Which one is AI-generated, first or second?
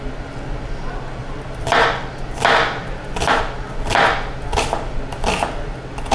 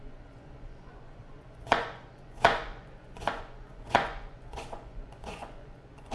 second